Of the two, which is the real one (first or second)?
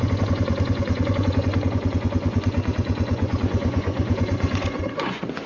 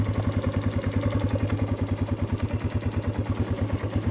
second